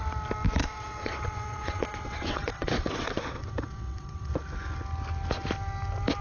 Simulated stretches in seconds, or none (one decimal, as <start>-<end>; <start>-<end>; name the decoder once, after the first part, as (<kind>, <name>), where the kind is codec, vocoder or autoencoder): 0.6-4.3 (vocoder, WaveNeXt)